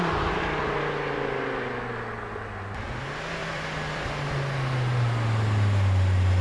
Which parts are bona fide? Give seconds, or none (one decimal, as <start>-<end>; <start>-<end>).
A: 0.0-3.4; 4.1-6.4